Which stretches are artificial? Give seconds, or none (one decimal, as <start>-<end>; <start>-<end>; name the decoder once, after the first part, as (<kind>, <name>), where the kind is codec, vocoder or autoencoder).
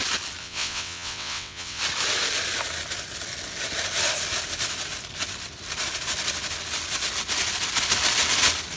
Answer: 0.4-1.8 (vocoder, WaveNeXt)